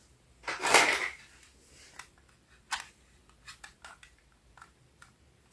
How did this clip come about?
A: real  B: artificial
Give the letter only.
A